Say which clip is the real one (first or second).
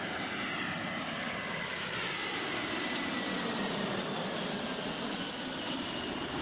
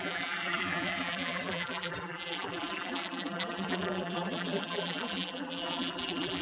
first